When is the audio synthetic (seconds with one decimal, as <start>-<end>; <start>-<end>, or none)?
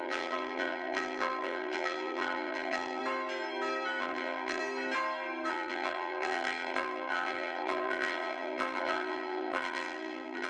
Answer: 0.0-3.0; 4.0-4.6; 5.5-10.5